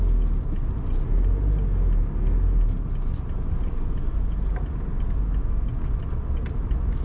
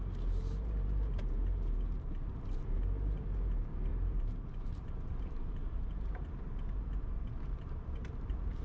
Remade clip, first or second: second